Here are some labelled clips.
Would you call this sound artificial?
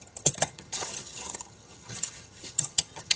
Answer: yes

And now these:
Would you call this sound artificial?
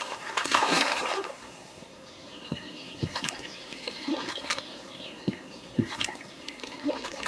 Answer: yes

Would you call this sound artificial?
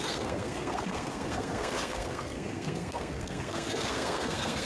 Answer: yes